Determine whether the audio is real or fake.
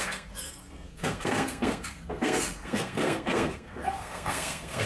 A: fake